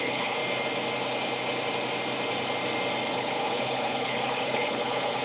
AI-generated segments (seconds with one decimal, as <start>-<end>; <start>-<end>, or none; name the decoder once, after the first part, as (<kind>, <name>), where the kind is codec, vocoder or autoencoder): 0.0-0.4 (codec, HILCodec); 3.1-5.2